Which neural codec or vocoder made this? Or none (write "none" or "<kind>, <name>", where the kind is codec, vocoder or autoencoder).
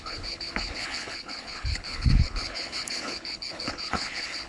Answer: codec, HILCodec